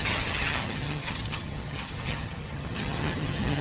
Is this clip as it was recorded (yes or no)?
no